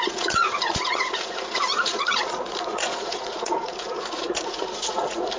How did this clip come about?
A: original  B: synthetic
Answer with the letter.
B